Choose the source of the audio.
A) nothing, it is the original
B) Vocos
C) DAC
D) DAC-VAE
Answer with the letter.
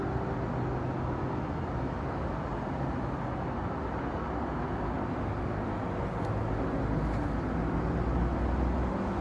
A